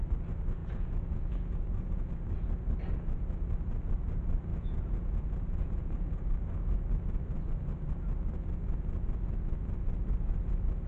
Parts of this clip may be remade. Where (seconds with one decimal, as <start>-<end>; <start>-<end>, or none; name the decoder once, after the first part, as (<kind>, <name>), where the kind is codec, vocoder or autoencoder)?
0.6-2.1 (vocoder, Vocos); 4.5-6.2

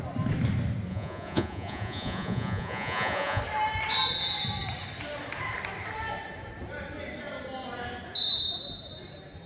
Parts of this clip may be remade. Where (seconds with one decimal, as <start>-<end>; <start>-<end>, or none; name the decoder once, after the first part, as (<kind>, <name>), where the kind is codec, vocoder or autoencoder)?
0.9-3.4 (vocoder, Vocos)

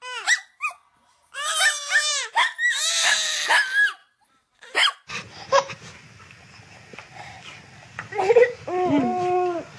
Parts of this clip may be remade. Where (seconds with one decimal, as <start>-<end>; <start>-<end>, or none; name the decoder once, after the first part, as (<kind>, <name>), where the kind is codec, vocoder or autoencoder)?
none

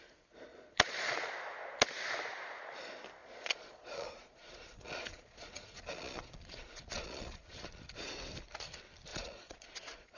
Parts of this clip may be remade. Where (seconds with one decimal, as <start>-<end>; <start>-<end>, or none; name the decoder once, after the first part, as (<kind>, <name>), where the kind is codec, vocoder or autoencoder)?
0.5-1.3 (vocoder, Vocos); 3.2-7.8; 9.1-10.2

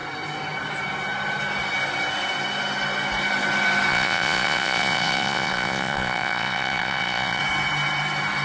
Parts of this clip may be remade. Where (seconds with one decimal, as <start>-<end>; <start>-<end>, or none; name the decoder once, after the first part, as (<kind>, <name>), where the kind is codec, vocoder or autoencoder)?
3.9-7.4 (vocoder, Vocos)

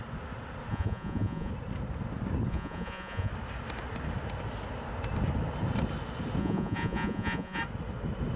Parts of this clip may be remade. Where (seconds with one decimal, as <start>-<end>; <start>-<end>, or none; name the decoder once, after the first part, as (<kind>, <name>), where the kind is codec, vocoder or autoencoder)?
0.7-1.5 (vocoder, Vocos); 2.5-3.3; 6.4-7.6